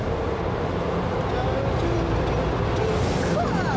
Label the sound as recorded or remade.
recorded